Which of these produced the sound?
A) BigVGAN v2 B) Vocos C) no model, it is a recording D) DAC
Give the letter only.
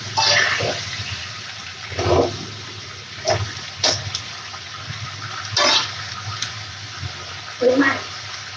C